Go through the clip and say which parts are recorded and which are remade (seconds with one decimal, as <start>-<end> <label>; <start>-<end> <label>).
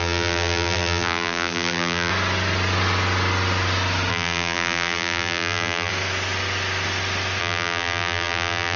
0.0-2.1 remade; 2.1-4.1 recorded; 4.1-5.9 remade; 5.9-7.4 recorded; 7.4-8.8 remade